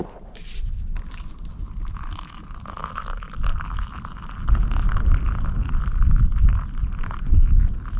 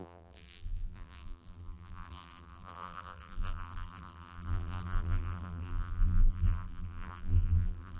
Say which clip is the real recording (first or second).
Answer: first